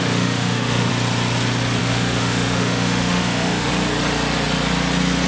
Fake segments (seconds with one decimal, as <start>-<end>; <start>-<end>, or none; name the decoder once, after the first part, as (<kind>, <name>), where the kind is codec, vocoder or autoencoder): 0.0-0.9 (autoencoder, DAC-VAE); 1.8-3.7